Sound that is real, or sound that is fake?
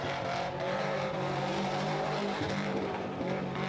fake